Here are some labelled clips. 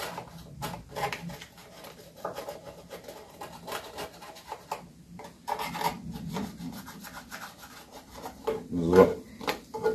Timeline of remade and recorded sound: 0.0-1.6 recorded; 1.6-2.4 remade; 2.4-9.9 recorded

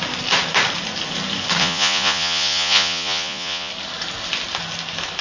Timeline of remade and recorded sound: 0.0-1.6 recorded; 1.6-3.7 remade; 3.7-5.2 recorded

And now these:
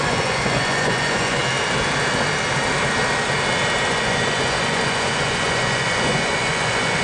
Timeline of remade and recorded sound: 0.0-1.4 remade; 1.4-3.9 recorded; 3.9-7.0 remade